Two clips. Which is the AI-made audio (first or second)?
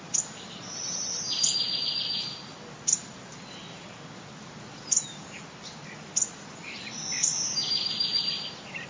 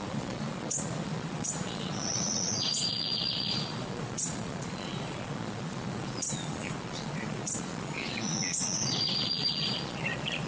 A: second